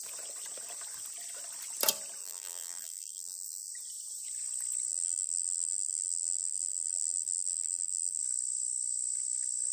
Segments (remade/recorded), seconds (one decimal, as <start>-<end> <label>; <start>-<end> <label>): 0.0-2.2 recorded; 2.2-3.7 remade; 3.7-4.9 recorded; 4.9-8.2 remade; 8.2-9.7 recorded